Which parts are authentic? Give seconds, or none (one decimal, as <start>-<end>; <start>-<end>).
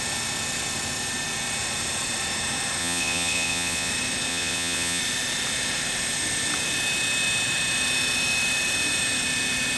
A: 0.0-2.8; 3.9-4.3; 5.0-9.8